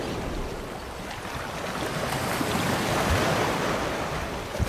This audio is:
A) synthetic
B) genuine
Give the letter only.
B